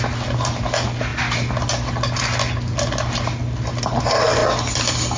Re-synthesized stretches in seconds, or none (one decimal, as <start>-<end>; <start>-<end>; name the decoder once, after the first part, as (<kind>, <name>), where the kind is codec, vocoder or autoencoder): none